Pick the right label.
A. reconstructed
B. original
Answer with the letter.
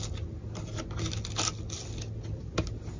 B